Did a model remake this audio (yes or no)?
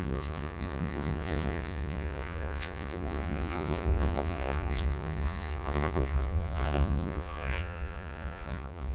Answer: yes